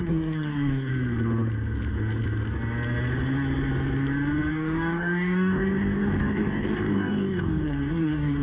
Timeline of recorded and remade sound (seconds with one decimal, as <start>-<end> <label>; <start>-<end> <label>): 0.0-0.9 remade; 0.9-4.5 recorded; 4.5-8.4 remade